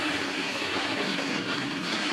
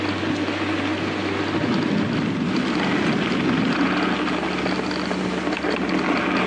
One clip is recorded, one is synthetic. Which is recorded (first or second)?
second